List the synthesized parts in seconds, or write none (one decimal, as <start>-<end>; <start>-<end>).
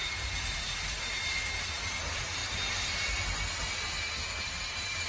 0.0-2.4; 4.4-5.1